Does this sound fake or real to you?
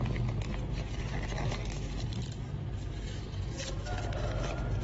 real